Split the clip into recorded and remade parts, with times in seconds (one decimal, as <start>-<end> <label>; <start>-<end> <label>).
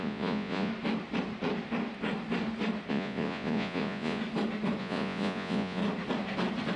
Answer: 0.0-0.7 remade; 0.7-2.9 recorded; 2.9-4.2 remade; 4.2-4.8 recorded; 4.8-5.8 remade; 5.8-6.8 recorded